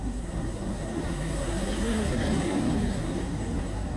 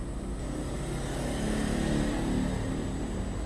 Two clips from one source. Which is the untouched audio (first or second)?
second